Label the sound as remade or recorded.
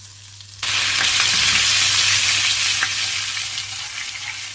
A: recorded